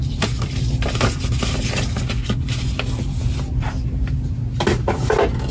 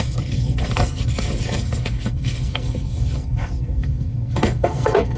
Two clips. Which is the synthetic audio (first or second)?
second